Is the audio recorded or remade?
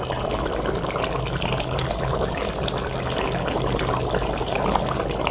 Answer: recorded